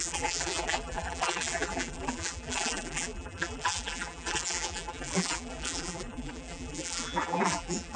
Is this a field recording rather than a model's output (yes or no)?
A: no